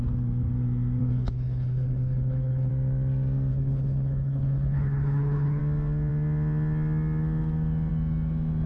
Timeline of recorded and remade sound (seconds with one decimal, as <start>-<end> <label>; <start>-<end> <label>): 0.0-1.0 recorded; 1.0-2.7 remade; 2.7-3.5 recorded; 3.5-5.6 remade; 5.6-8.7 recorded